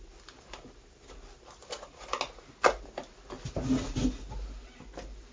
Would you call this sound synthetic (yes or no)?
no